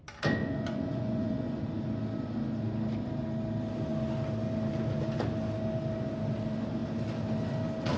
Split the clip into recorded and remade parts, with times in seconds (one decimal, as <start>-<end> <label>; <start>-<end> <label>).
0.0-0.4 recorded; 0.4-1.6 remade; 1.6-8.0 recorded